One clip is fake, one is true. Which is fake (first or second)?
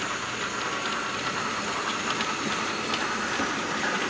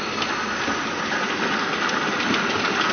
first